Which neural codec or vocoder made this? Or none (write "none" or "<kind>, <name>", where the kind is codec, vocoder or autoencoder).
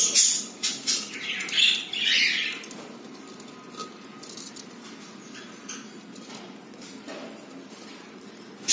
none